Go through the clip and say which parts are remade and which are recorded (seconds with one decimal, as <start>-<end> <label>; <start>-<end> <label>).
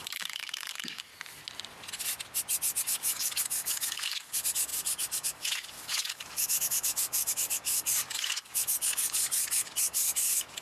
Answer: 0.0-1.1 remade; 1.1-2.8 recorded; 2.8-10.6 remade